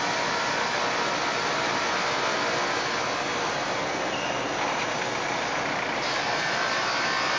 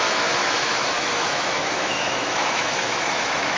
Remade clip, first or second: second